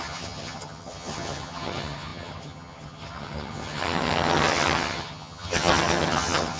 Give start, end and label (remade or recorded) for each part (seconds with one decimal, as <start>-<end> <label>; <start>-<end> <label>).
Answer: 0.0-6.6 remade